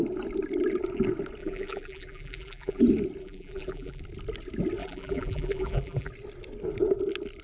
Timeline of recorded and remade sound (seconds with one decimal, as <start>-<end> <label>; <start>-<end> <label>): 0.0-1.4 recorded; 1.4-2.8 remade; 2.8-3.2 recorded; 3.2-4.0 remade; 4.0-4.8 recorded; 4.8-6.1 remade; 6.1-7.4 recorded